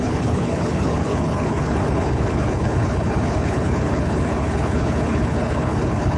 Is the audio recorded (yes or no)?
no